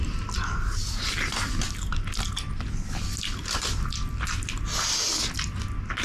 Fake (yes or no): no